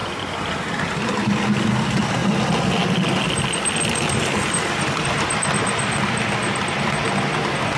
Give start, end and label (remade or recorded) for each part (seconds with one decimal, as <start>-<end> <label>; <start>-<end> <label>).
0.0-7.8 recorded